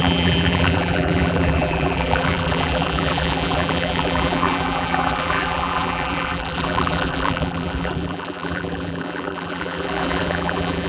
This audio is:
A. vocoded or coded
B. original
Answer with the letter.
A